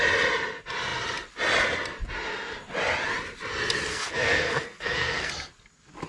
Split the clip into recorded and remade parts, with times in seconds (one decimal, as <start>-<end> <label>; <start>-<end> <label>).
0.0-3.9 recorded; 3.9-5.3 remade; 5.3-6.1 recorded